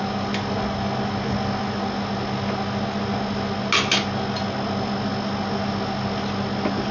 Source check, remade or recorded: recorded